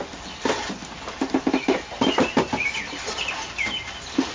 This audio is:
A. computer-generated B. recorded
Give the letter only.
B